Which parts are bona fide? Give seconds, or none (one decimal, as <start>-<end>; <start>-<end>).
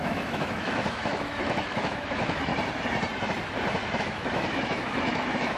2.5-4.0